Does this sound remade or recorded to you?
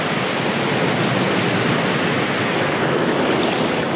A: recorded